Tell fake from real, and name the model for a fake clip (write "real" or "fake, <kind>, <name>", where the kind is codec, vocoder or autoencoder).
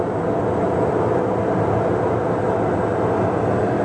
real